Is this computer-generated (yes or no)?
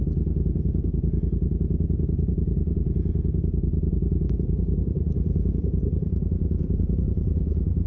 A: yes